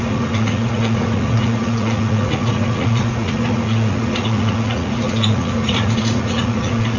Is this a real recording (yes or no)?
no